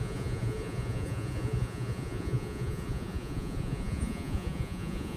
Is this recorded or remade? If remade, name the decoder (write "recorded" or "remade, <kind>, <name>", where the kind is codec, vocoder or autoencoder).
remade, vocoder, Vocos